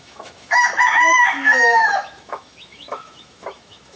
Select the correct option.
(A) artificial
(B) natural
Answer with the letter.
A